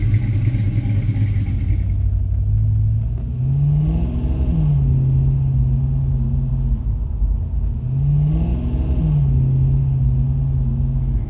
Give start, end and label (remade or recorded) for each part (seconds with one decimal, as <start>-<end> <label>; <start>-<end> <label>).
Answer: 0.0-11.3 recorded